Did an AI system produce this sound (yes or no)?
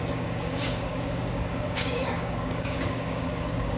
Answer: yes